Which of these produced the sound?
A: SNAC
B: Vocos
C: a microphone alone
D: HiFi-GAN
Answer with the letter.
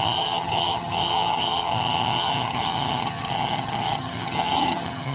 D